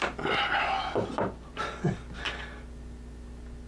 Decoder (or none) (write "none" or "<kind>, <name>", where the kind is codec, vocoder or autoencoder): none